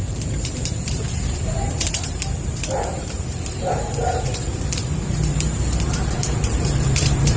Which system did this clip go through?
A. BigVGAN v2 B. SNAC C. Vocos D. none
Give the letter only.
A